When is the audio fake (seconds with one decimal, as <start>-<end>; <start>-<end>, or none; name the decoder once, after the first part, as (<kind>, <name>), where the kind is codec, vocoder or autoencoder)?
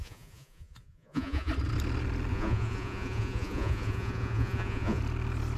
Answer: 0.0-1.5 (vocoder, Vocos); 2.3-5.0